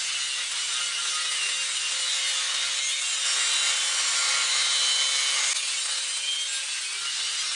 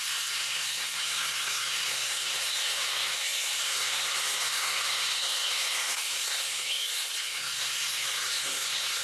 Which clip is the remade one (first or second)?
second